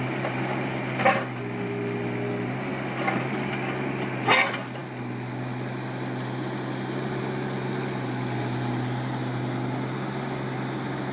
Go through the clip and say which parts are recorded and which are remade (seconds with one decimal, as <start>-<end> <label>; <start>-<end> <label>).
0.0-11.1 recorded